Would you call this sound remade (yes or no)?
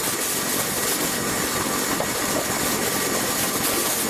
no